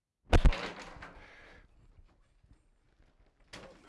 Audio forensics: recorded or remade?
recorded